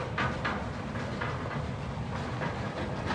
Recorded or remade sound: recorded